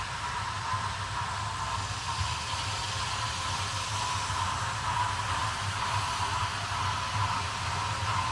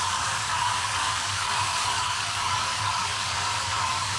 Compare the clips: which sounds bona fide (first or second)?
first